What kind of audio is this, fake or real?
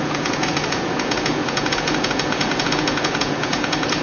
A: fake